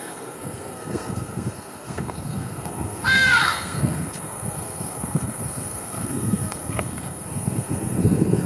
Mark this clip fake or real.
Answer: fake